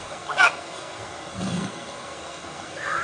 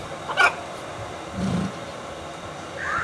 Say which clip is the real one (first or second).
second